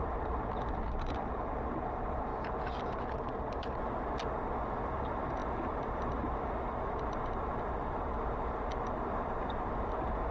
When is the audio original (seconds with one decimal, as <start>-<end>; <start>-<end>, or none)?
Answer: 2.3-4.6